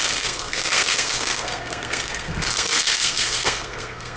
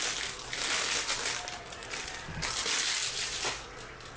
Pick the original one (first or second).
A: second